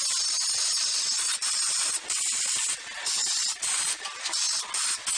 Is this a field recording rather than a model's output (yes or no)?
yes